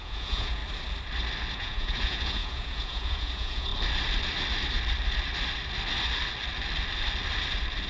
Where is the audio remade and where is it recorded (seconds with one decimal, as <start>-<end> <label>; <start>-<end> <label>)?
0.0-0.6 remade; 0.6-1.5 recorded; 1.5-3.7 remade; 3.7-7.9 recorded

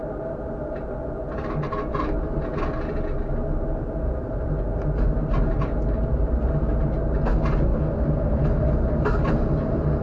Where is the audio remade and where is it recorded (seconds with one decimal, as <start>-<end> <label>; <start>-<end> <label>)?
0.0-6.1 recorded; 6.1-7.2 remade; 7.2-10.0 recorded